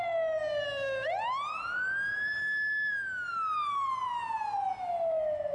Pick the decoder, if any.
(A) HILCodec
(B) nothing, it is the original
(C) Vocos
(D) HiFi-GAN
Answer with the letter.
B